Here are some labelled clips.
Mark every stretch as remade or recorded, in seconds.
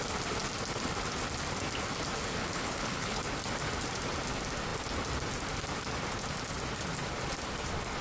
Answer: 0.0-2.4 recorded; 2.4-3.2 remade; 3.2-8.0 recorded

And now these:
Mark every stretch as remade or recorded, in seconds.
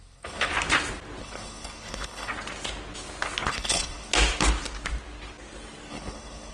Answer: 0.0-0.5 remade; 0.5-1.2 recorded; 1.2-2.3 remade; 2.3-3.5 recorded; 3.5-4.1 remade; 4.1-5.9 recorded; 5.9-6.5 remade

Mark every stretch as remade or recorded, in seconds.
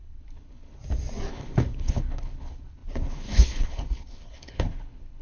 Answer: 0.0-0.8 remade; 0.8-1.3 recorded; 1.3-5.2 remade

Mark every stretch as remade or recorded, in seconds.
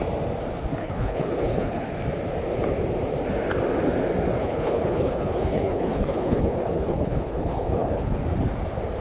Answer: 0.0-0.8 recorded; 0.8-1.8 remade; 1.8-4.4 recorded; 4.4-8.2 remade; 8.2-9.0 recorded